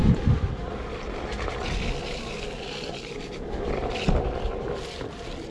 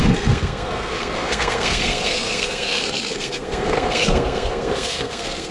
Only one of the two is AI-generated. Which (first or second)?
second